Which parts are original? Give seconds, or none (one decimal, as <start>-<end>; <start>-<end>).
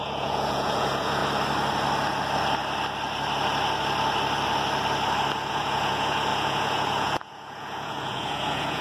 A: 1.2-5.5